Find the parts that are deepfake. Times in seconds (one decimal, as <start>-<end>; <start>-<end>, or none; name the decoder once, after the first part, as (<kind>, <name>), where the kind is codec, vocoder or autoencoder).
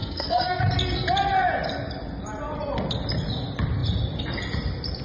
0.0-0.6 (codec, SNAC)